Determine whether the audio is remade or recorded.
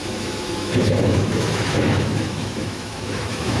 remade